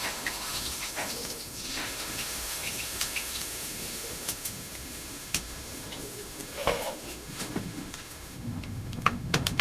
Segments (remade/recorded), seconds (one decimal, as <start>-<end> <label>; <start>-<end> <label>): 0.0-9.6 remade